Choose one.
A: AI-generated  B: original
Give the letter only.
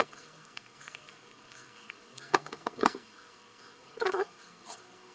A